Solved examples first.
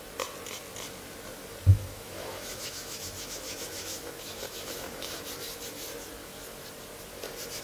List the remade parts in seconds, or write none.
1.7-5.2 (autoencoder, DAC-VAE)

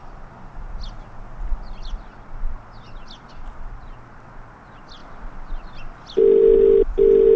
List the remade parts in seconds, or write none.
none

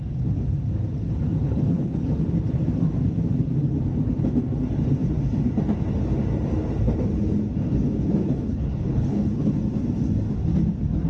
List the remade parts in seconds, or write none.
1.4-2.0 (codec, HILCodec); 8.2-9.5

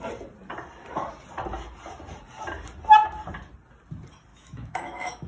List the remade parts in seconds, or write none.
4.3-5.3 (autoencoder, DAC-VAE)

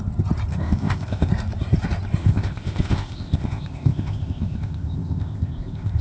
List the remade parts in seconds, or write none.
0.5-1.3 (codec, ZipCodec); 2.2-6.0